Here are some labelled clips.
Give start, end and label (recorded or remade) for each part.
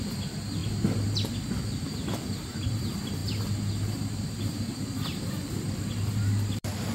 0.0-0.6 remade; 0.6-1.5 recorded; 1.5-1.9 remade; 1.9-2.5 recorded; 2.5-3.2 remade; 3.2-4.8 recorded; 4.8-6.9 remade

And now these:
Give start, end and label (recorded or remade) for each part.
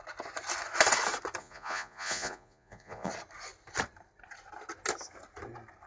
0.0-1.4 recorded; 1.4-3.1 remade; 3.1-5.9 recorded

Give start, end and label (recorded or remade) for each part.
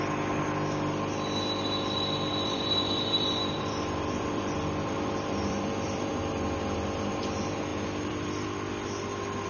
0.0-2.3 recorded; 2.3-6.1 remade; 6.1-7.7 recorded; 7.7-8.7 remade; 8.7-9.5 recorded